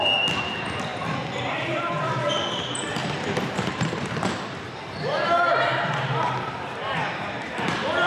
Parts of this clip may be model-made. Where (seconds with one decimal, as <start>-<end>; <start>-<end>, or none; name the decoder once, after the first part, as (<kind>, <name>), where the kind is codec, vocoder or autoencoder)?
3.0-8.1 (vocoder, BigVGAN v2)